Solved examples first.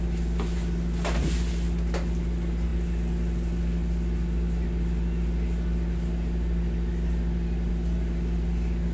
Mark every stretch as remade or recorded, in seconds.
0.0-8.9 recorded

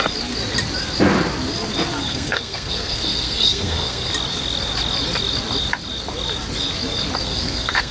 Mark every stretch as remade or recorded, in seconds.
0.0-2.0 recorded; 2.0-4.1 remade; 4.1-7.2 recorded; 7.2-7.9 remade

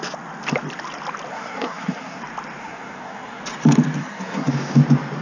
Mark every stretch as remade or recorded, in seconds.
0.0-1.3 recorded; 1.3-2.2 remade; 2.2-2.6 recorded; 2.6-3.4 remade; 3.4-4.0 recorded; 4.0-4.5 remade; 4.5-5.2 recorded